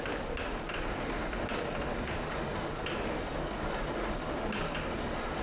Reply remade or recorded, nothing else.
recorded